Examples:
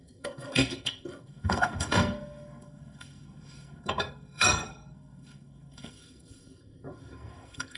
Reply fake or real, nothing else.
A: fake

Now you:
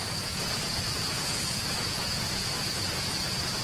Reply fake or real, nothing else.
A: fake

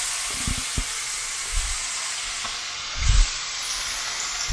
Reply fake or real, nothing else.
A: real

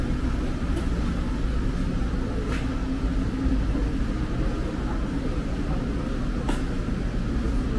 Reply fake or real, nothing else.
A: real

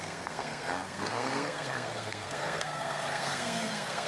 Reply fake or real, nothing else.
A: fake